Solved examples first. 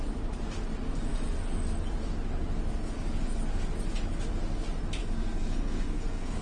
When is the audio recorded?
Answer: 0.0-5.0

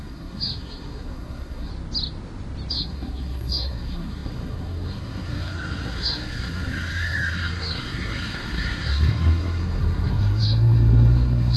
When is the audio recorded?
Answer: 1.7-2.7

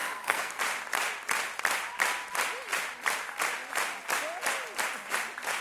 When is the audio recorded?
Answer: 0.6-5.6